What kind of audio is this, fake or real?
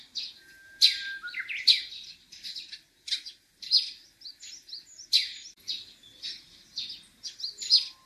real